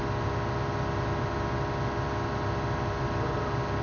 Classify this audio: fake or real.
real